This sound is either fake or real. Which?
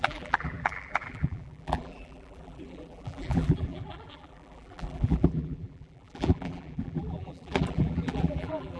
fake